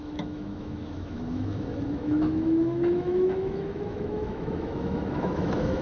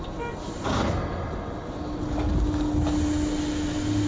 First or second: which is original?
second